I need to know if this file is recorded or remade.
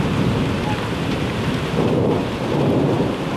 remade